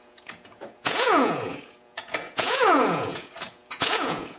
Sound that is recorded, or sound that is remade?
remade